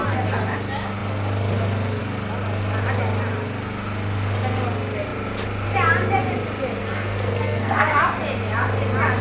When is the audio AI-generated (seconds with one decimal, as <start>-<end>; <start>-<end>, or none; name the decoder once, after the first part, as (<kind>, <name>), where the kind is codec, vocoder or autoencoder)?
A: 6.8-8.0 (codec, SNAC)